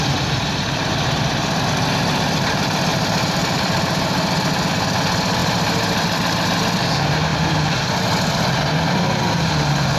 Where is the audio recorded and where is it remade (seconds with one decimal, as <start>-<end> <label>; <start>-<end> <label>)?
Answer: 0.0-2.9 recorded; 2.9-4.7 remade; 4.7-7.3 recorded; 7.3-8.0 remade; 8.0-10.0 recorded